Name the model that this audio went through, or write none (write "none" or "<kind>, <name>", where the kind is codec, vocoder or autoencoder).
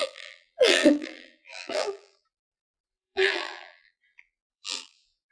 vocoder, BigVGAN v2